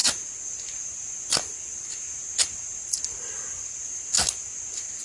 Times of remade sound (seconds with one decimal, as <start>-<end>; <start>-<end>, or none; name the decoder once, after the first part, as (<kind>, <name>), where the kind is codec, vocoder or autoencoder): none